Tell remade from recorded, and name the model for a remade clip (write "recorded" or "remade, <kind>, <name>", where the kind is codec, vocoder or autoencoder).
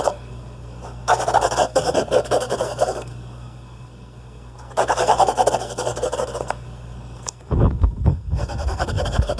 remade, codec, SNAC